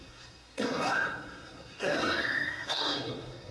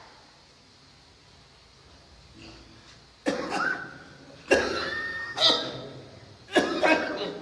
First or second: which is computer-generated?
first